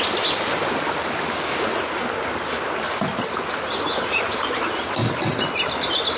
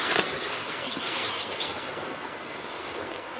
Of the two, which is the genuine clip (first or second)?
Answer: first